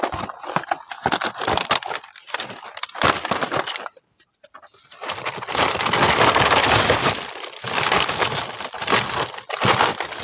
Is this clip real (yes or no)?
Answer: yes